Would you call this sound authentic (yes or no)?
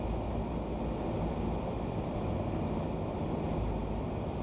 yes